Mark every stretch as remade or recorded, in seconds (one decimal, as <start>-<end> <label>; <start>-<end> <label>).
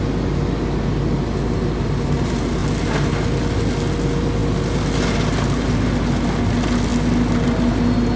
0.0-8.2 recorded